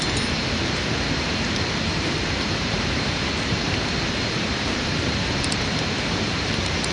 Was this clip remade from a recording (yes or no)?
yes